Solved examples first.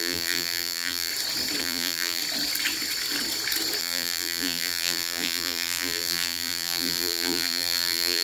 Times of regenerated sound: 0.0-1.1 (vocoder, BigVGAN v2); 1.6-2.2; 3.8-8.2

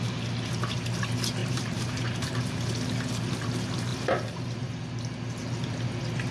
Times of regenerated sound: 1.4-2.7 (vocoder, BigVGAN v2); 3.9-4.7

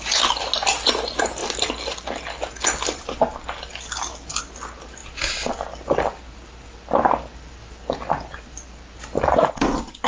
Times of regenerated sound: none